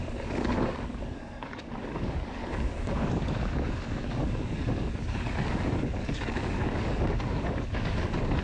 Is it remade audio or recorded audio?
remade